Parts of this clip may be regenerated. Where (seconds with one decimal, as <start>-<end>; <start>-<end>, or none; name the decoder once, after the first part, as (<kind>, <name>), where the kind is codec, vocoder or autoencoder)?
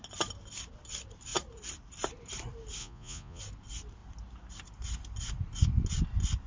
2.8-3.4 (vocoder, Vocos)